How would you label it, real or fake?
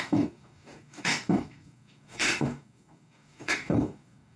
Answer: fake